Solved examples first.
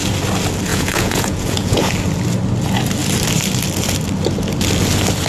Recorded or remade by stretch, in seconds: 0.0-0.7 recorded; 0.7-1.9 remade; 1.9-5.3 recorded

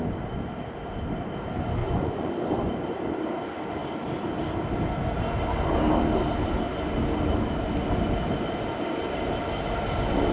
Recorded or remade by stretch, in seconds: 0.0-1.8 recorded; 1.8-2.3 remade; 2.3-10.3 recorded

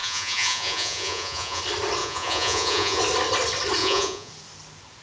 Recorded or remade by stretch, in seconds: 0.0-1.6 remade; 1.6-2.0 recorded; 2.0-3.0 remade; 3.0-3.8 recorded; 3.8-4.3 remade; 4.3-5.0 recorded